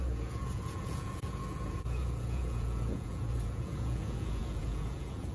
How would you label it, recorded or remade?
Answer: remade